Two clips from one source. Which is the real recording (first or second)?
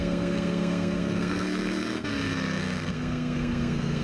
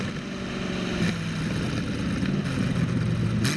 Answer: second